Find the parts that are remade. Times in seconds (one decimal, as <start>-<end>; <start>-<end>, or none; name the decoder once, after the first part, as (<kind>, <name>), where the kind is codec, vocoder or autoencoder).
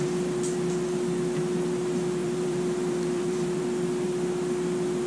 2.2-3.6 (vocoder, BigVGAN v2)